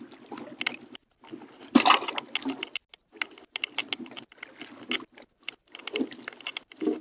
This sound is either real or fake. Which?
real